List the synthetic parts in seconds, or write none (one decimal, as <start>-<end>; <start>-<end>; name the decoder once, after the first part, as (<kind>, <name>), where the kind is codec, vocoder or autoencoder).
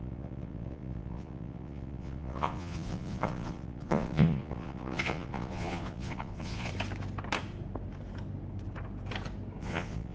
0.0-6.7 (vocoder, Vocos); 9.6-10.1